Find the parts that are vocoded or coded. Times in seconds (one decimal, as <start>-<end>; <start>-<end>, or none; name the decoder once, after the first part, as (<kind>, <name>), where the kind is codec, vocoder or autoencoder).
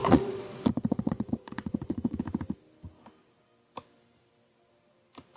0.0-2.2 (vocoder, Vocos)